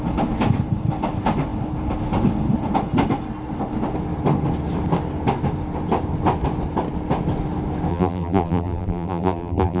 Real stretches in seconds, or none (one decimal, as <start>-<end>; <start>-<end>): 0.0-7.9